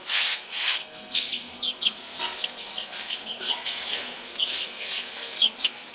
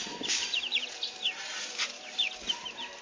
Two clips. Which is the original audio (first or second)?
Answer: second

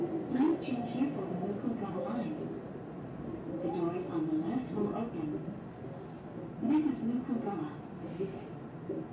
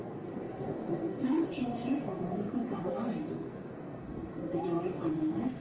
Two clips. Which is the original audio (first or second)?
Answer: first